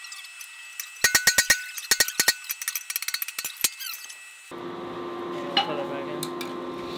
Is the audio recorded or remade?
recorded